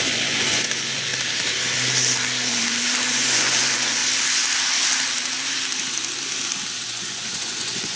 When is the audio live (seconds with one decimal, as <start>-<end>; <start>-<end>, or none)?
1.1-3.1; 4.0-6.8